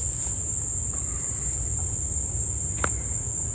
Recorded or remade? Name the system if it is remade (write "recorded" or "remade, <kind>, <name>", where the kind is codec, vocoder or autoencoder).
recorded